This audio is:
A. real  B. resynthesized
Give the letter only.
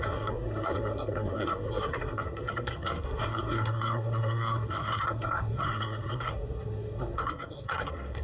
B